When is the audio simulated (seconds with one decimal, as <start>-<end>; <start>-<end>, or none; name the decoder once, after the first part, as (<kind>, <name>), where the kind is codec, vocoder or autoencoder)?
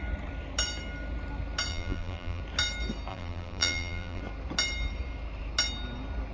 1.7-2.4 (vocoder, BigVGAN v2); 3.1-4.2